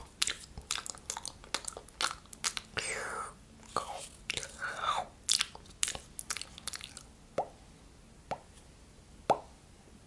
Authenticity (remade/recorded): recorded